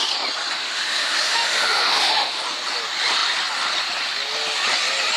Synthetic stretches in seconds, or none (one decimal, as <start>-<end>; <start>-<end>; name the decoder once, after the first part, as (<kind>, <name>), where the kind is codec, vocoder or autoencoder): 0.6-2.4 (autoencoder, DAC-VAE)